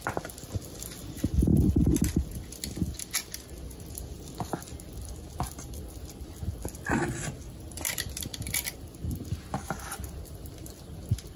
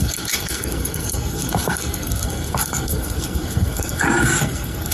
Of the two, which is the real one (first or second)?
first